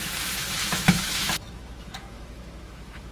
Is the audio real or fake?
fake